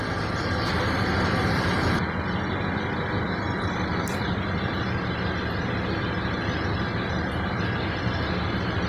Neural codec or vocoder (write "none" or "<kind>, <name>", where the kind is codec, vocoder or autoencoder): none